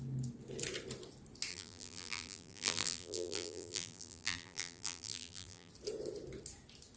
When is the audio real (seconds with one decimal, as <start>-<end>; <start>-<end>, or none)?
0.0-1.5; 5.7-7.0